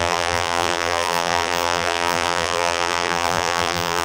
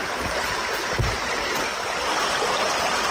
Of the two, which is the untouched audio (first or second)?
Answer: second